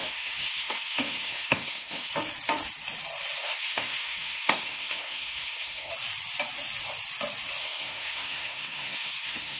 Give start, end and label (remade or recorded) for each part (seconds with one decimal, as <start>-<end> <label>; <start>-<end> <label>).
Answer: 0.0-2.1 remade; 2.1-3.4 recorded; 3.4-5.9 remade; 5.9-7.6 recorded; 7.6-9.6 remade